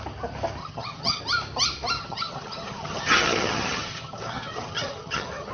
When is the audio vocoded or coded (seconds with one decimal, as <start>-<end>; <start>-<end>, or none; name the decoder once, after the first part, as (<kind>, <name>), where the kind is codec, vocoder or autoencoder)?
0.6-1.2 (vocoder, HiFi-GAN); 2.0-5.5